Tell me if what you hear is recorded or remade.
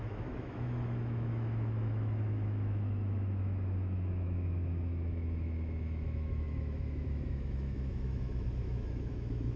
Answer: remade